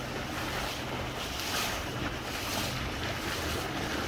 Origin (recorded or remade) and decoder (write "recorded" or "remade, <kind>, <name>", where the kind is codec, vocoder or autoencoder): recorded